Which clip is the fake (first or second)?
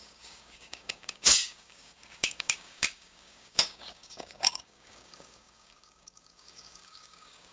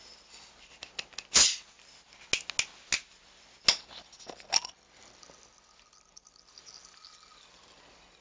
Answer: first